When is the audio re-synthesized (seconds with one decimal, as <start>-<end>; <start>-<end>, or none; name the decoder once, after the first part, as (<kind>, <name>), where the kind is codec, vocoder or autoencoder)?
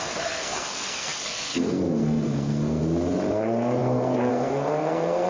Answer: 0.0-2.8 (codec, SNAC); 3.3-5.3